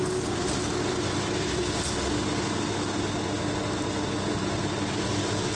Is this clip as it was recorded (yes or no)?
yes